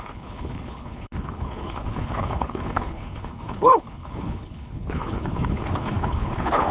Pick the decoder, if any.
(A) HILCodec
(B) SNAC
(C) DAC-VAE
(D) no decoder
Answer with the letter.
A